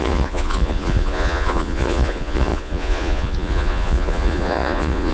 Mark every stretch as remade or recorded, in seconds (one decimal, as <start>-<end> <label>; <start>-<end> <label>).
0.0-5.1 remade

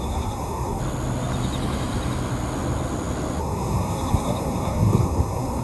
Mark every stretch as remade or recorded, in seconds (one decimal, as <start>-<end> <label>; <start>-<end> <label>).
0.0-0.8 remade; 0.8-3.4 recorded; 3.4-5.6 remade

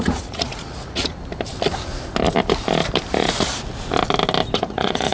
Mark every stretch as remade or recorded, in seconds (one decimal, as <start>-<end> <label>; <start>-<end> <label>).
0.0-1.1 remade; 1.1-3.1 recorded; 3.1-3.5 remade; 3.5-4.6 recorded; 4.6-5.1 remade

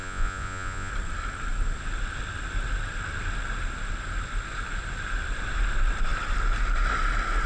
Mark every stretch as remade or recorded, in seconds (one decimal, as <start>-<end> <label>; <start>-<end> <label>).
0.0-0.9 remade; 0.9-7.5 recorded